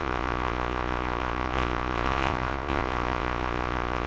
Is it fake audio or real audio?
fake